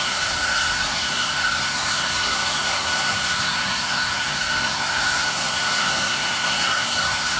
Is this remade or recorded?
remade